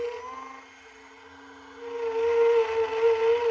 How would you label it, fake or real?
real